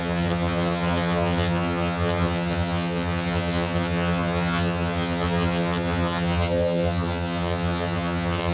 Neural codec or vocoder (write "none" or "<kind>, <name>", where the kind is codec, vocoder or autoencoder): vocoder, HiFi-GAN